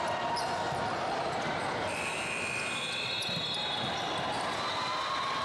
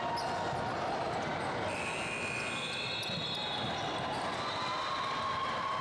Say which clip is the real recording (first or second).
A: second